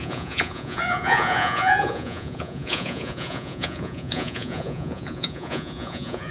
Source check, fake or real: fake